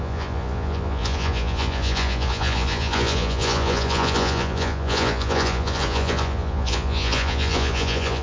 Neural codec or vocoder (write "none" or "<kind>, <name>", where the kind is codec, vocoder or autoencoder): vocoder, Vocos